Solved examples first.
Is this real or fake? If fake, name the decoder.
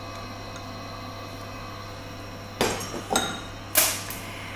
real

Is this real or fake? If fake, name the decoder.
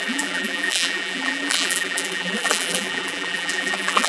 fake, vocoder, BigVGAN v2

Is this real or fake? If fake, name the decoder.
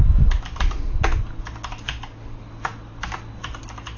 real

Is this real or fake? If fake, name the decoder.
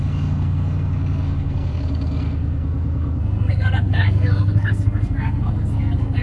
fake, codec, SNAC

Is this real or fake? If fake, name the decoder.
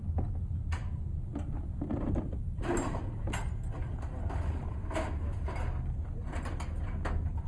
real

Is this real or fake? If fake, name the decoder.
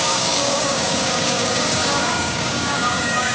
fake, codec, DAC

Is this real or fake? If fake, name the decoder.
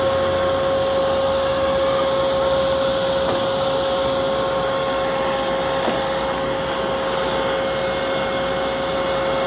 real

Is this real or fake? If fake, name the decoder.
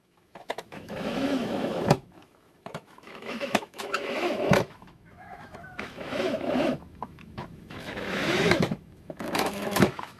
fake, autoencoder, DAC-VAE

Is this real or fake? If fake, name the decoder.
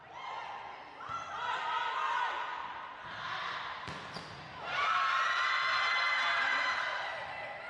real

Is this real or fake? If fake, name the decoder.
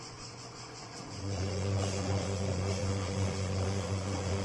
fake, vocoder, Vocos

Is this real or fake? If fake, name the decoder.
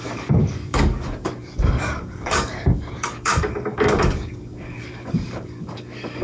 fake, codec, DAC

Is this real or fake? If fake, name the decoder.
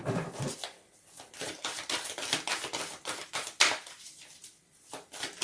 fake, vocoder, BigVGAN v2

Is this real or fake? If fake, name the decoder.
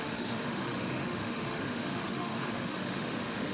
fake, autoencoder, DAC-VAE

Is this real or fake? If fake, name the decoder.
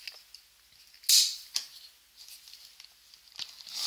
real